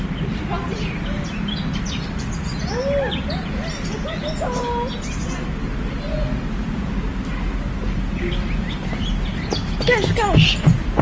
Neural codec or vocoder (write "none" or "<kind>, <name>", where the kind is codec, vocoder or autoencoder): none